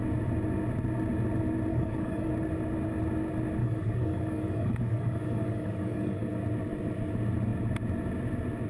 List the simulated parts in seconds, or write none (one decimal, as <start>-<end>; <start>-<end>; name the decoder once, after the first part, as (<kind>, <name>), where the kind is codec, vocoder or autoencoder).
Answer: 1.7-2.3 (codec, DAC); 3.6-6.3